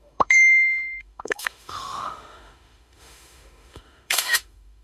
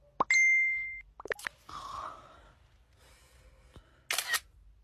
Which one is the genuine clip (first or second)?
second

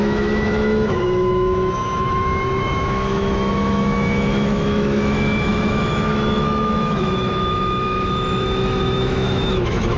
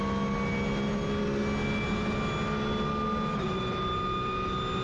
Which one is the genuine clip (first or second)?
second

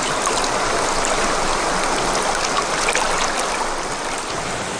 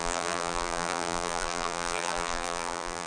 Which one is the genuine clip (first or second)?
first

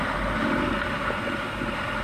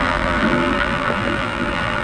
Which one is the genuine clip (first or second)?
first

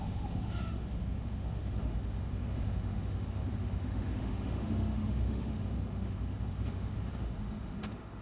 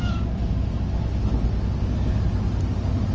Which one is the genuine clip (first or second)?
second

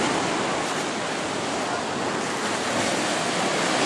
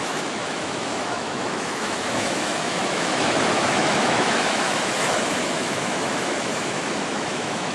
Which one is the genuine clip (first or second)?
first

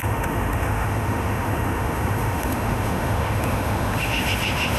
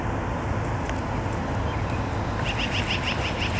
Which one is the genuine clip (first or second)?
second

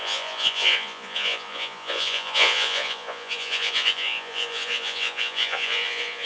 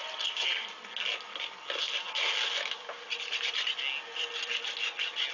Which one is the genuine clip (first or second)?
second